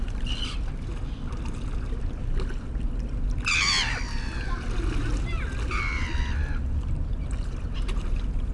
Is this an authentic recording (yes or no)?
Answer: yes